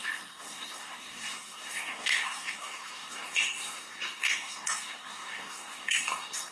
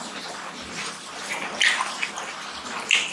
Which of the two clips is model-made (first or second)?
first